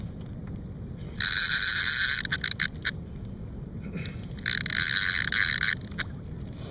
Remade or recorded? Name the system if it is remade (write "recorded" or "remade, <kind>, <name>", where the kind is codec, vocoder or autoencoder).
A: recorded